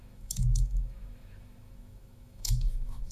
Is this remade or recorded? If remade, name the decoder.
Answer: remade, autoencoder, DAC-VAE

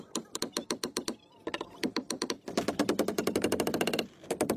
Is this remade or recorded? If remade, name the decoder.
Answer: recorded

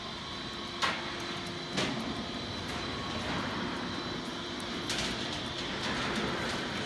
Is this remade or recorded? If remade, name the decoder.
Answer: recorded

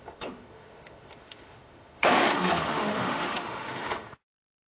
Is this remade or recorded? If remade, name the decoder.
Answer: remade, autoencoder, DAC-VAE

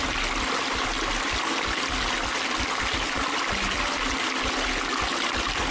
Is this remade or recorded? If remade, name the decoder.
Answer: recorded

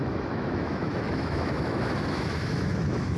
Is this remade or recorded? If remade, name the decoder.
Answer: remade, autoencoder, DAC-VAE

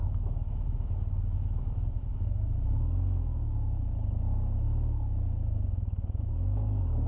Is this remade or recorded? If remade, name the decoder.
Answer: remade, autoencoder, DAC-VAE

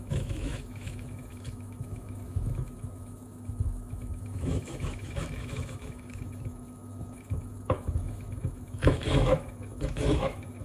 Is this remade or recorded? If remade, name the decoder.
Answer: remade, autoencoder, DAC-VAE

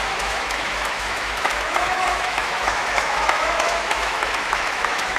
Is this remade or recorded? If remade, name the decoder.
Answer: remade, autoencoder, DAC-VAE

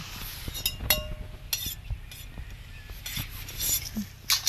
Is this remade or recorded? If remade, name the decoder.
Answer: recorded